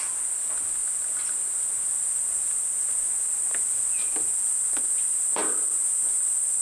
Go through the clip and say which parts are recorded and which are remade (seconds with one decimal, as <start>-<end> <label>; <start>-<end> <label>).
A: 0.0-6.6 recorded